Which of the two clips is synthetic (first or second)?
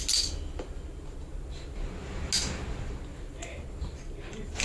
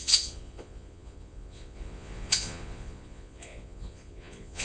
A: second